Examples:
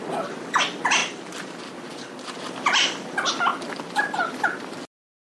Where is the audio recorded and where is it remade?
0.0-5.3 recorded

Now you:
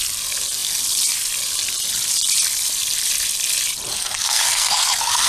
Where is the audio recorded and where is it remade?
0.0-3.9 recorded; 3.9-5.3 remade

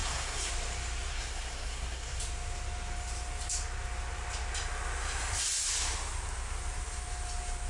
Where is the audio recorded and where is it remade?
0.0-0.5 remade; 0.5-1.1 recorded; 1.1-2.2 remade; 2.2-7.7 recorded

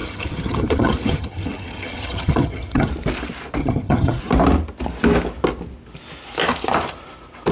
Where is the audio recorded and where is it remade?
0.0-2.9 remade; 2.9-3.6 recorded; 3.6-4.2 remade; 4.2-7.5 recorded

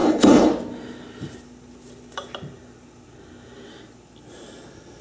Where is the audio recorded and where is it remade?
0.0-0.5 remade; 0.5-5.0 recorded

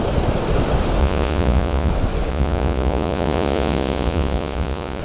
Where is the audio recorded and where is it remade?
0.0-1.0 recorded; 1.0-1.9 remade; 1.9-2.3 recorded; 2.3-5.0 remade

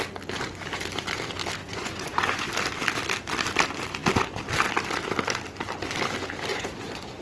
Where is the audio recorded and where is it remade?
0.0-1.6 recorded; 1.6-2.5 remade; 2.5-6.5 recorded; 6.5-7.2 remade